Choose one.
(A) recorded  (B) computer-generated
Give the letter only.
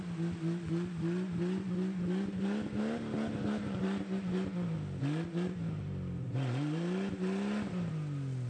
A